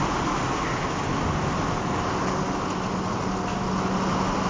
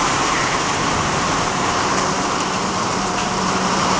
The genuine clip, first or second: first